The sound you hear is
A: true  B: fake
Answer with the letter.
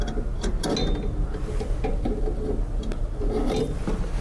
A